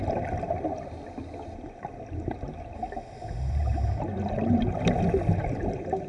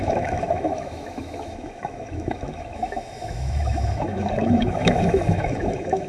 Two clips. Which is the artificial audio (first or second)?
second